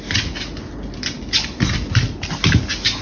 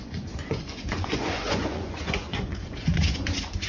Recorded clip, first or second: first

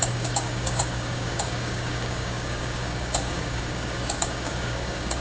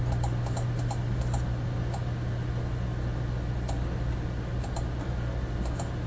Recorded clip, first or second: second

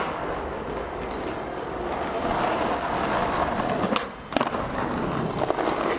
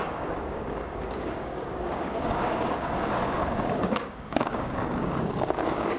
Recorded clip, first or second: first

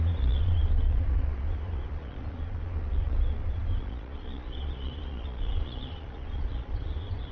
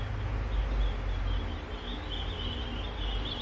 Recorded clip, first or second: second